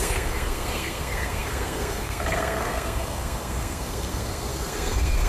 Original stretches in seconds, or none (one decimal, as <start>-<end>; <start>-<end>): none